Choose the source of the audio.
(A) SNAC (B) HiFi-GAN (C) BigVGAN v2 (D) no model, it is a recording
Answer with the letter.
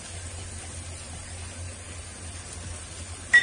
D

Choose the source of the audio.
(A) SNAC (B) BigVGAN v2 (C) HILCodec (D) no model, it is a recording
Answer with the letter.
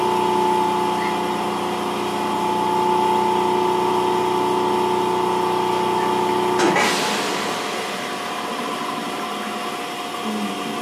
D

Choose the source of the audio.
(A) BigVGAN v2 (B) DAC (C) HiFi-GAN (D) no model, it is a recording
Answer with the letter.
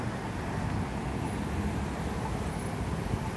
D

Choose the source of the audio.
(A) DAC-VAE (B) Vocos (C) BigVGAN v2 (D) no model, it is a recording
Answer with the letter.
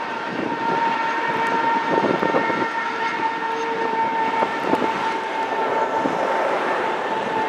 C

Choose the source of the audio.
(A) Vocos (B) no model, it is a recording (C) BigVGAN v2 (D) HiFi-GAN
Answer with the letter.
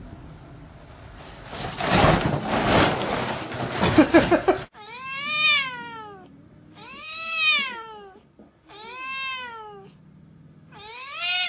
B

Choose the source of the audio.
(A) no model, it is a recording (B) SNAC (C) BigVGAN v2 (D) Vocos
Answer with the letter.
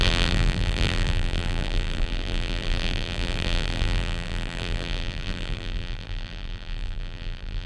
C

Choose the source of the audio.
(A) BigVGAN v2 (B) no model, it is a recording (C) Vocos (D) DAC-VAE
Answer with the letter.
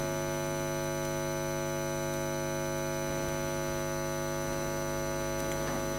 B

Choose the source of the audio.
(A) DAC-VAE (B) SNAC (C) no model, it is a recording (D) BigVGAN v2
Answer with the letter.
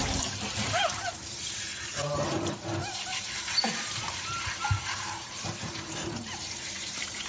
D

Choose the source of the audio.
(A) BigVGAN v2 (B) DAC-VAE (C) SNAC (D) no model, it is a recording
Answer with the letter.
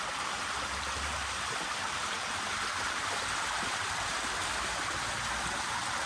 A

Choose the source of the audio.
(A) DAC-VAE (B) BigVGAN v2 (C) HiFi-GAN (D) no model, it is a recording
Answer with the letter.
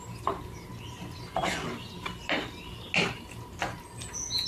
D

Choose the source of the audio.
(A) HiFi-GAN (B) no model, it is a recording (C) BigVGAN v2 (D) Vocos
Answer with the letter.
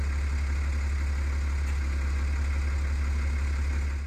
B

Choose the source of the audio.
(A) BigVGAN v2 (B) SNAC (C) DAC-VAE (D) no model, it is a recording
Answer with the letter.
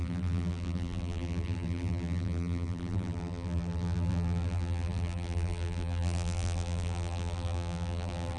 A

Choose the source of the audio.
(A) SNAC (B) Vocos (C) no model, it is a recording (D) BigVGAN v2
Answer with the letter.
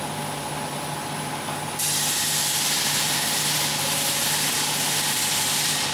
C